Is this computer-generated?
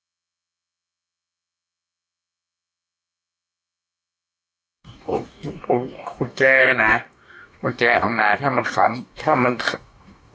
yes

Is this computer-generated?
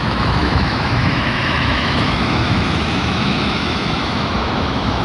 yes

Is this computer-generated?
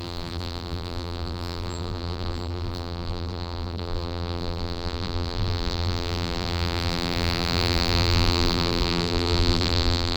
yes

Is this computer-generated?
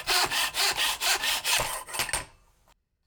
no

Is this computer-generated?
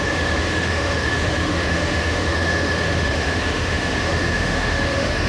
yes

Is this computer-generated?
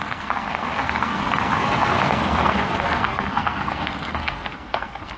yes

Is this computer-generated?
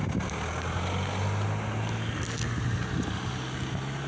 no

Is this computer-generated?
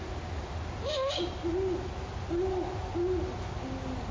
no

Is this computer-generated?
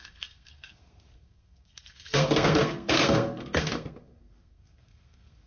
yes